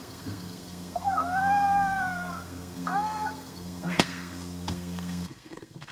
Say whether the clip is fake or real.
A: fake